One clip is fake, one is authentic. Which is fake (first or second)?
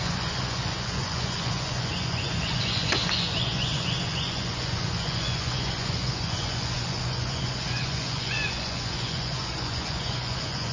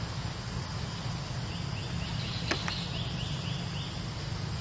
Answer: first